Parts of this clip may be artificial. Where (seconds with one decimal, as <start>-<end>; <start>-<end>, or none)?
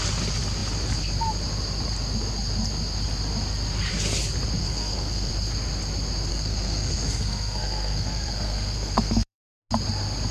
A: 4.6-5.3; 6.3-9.4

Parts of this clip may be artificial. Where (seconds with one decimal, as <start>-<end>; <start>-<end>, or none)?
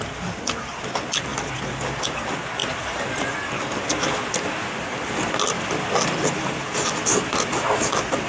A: none